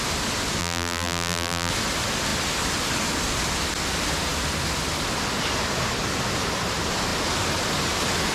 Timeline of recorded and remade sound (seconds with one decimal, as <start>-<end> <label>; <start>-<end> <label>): 0.0-0.6 recorded; 0.6-1.7 remade; 1.7-8.3 recorded